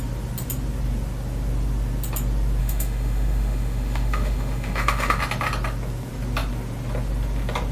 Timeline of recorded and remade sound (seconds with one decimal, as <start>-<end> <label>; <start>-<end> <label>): 0.0-2.6 recorded; 2.6-5.2 remade; 5.2-7.7 recorded